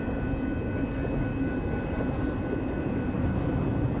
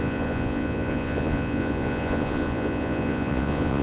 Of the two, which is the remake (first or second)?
second